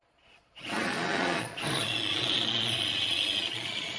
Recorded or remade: remade